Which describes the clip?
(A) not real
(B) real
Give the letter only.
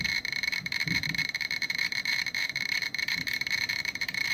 A